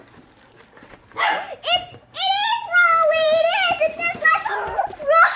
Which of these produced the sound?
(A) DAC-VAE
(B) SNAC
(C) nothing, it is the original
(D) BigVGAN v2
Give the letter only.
D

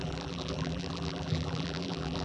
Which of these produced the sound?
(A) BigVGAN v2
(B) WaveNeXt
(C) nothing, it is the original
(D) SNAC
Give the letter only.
A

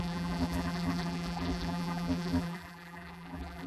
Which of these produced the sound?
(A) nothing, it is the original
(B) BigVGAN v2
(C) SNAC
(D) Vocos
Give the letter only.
B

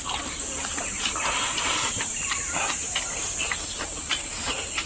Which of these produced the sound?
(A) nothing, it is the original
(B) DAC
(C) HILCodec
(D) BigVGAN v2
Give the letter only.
D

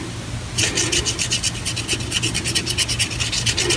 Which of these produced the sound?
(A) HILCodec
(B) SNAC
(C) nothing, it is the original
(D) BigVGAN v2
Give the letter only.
C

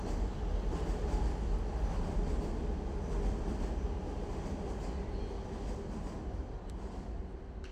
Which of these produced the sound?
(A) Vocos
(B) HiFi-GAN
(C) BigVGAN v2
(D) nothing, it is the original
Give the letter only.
D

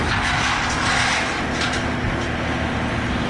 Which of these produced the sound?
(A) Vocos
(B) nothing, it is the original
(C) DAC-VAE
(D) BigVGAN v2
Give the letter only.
B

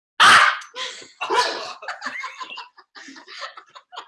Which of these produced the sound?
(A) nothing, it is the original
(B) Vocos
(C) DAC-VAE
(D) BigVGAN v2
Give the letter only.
A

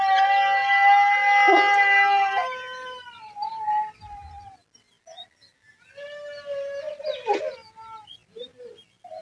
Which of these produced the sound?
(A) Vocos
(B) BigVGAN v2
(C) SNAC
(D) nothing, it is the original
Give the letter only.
D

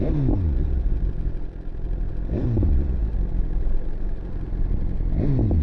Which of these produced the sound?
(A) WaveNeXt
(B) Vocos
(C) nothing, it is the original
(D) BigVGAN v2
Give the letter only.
C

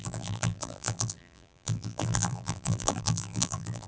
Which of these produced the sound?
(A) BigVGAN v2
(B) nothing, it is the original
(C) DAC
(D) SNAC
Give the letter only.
A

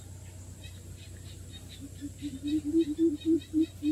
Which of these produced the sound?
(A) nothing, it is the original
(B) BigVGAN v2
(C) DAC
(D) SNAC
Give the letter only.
A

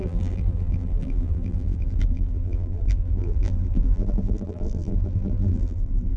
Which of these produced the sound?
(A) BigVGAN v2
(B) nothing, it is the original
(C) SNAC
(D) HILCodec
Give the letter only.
A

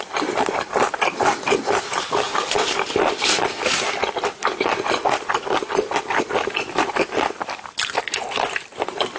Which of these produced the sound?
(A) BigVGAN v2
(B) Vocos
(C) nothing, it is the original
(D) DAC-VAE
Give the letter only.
A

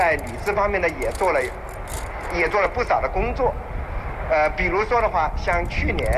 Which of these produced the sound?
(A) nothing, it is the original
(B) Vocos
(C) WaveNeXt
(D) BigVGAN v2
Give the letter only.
A